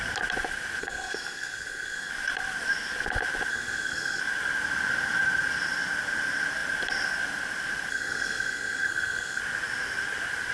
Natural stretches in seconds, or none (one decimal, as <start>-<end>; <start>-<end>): 0.0-0.8; 2.1-3.5; 4.2-7.9; 9.4-10.5